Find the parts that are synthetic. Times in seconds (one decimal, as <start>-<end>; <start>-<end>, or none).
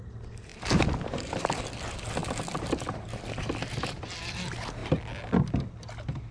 none